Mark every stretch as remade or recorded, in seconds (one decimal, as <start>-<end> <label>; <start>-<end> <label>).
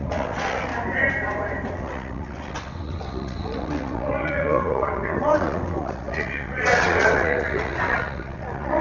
0.0-0.7 remade; 0.7-1.7 recorded; 1.7-8.8 remade